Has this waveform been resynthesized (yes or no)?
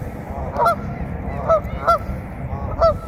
no